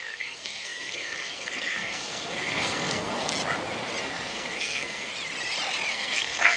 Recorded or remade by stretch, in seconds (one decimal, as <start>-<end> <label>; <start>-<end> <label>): 0.0-3.3 remade; 3.3-4.0 recorded; 4.0-5.1 remade; 5.1-5.9 recorded; 5.9-6.6 remade